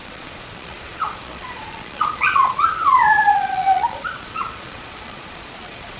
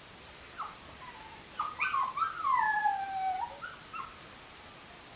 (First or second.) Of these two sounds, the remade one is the first